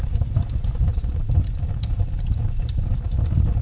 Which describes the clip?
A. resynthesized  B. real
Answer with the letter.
A